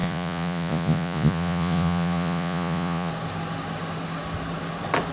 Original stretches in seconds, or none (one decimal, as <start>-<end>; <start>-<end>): 3.1-5.1